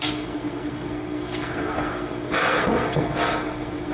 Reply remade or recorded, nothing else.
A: remade